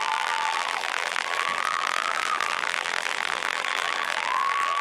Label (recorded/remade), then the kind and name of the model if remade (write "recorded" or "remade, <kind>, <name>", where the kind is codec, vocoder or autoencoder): remade, vocoder, BigVGAN v2